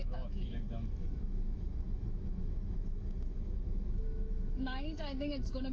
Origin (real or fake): fake